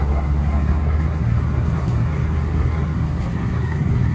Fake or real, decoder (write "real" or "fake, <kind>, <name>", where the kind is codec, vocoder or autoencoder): fake, codec, SNAC